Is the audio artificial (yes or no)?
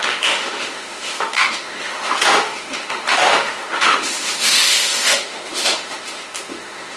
yes